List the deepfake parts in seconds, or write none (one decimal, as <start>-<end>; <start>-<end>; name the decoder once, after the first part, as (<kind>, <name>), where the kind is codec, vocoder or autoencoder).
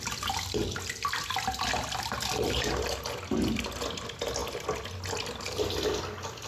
none